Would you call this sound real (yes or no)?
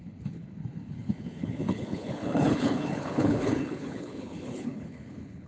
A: no